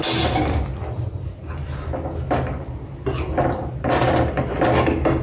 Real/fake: real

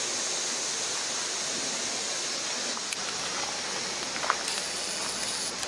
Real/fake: real